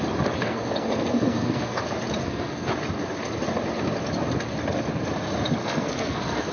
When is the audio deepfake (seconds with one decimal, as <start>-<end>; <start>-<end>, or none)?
0.4-1.8; 2.2-2.7; 5.6-6.5

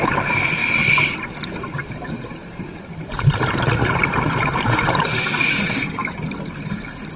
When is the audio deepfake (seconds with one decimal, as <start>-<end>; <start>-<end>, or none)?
0.0-0.6; 1.7-7.2

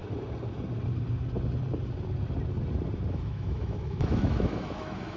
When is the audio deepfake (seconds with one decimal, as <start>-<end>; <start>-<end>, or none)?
3.1-5.2

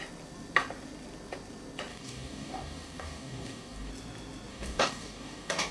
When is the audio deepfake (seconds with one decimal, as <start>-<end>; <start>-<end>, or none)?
1.9-3.9; 4.5-5.7

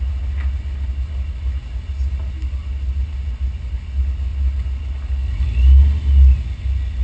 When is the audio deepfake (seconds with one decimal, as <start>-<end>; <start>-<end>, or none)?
none

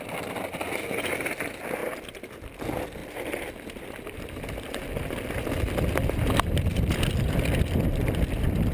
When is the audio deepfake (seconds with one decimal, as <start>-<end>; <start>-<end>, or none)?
1.8-2.6; 3.0-6.7

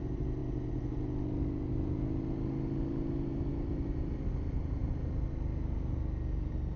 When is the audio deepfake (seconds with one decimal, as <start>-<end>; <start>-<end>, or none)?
none